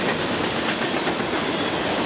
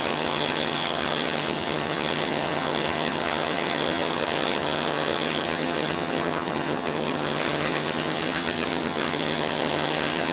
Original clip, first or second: first